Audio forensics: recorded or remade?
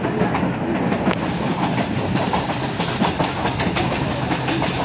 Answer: recorded